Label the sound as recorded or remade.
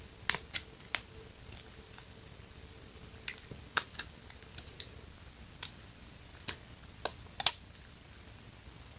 recorded